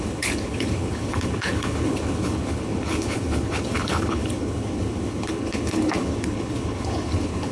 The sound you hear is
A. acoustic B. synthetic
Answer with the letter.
B